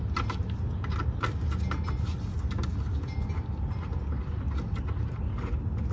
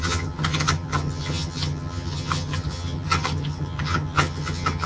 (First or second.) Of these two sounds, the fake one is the second